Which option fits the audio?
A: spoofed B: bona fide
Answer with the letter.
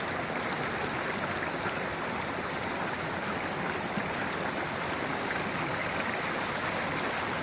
B